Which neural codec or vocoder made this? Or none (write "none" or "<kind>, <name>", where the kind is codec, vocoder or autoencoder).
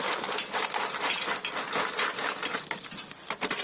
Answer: none